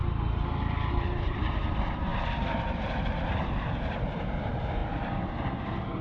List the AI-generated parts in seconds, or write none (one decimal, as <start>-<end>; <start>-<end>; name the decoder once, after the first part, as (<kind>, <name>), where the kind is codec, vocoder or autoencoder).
0.9-4.8 (vocoder, BigVGAN v2)